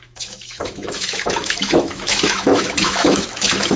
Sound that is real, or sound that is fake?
fake